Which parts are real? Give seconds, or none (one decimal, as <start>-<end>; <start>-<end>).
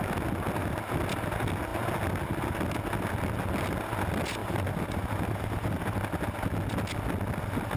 0.0-4.4; 5.8-7.8